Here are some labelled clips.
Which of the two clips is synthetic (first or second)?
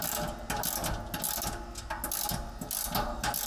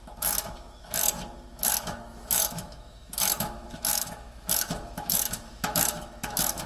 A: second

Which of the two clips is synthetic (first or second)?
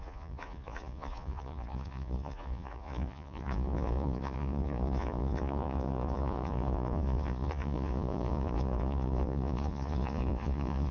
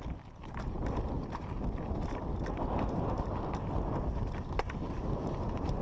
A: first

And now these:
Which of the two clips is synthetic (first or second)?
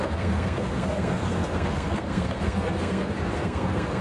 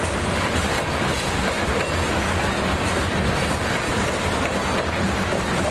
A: first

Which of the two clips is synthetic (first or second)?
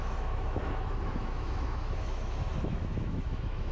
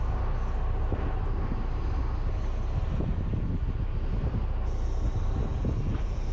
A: first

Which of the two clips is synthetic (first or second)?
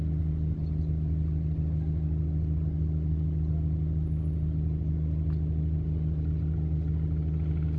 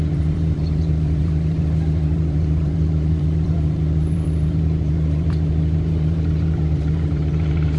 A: second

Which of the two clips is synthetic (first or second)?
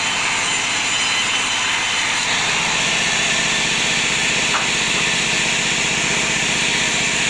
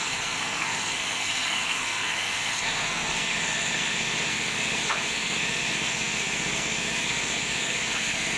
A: second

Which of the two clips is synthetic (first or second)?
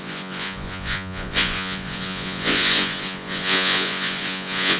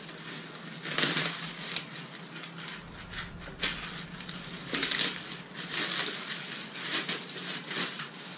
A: first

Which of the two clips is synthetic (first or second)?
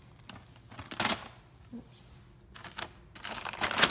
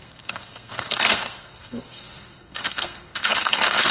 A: second